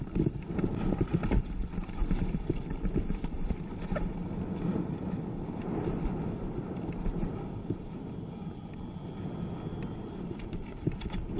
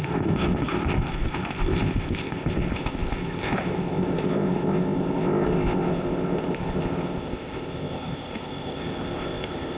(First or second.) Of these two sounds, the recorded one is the first